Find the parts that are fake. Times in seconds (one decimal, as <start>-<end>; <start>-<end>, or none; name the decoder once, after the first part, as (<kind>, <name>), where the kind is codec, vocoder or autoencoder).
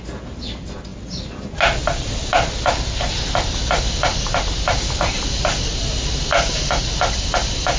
none